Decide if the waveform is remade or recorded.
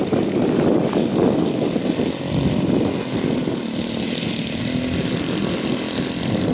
recorded